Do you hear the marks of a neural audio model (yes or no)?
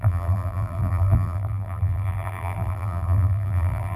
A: yes